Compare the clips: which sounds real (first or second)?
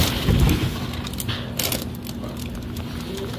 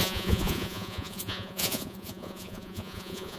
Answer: first